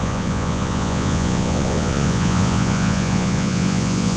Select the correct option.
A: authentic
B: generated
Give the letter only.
B